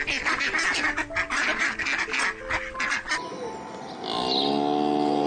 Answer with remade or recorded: recorded